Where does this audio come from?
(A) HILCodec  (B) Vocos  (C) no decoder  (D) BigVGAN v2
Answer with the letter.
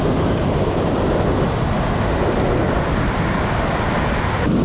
C